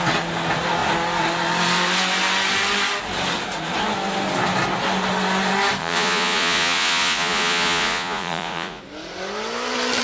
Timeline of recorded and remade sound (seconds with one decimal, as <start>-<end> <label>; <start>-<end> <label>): 0.0-5.8 recorded; 5.8-8.8 remade; 8.8-10.0 recorded